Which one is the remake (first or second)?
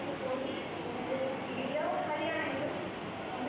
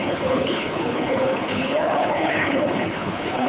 second